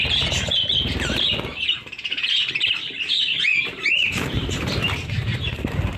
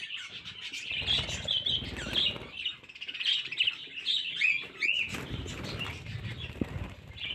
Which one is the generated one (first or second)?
first